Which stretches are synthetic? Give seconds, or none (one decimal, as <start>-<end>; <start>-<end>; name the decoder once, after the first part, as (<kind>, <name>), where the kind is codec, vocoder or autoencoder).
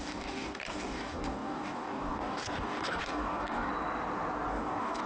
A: 0.0-3.7 (codec, DAC); 4.5-5.1